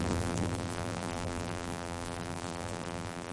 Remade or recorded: remade